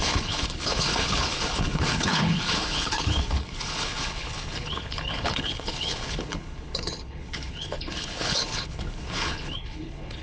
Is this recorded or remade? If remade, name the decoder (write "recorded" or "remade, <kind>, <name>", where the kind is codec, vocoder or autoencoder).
remade, codec, HILCodec